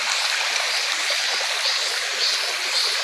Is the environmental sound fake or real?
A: real